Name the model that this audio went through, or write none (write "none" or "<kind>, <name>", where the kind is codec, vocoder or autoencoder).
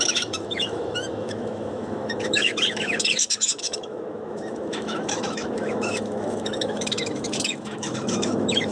autoencoder, DAC-VAE